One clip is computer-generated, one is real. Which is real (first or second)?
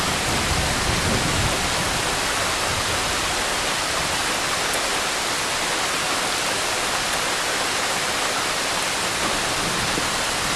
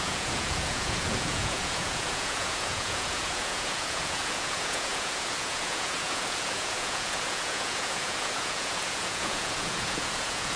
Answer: first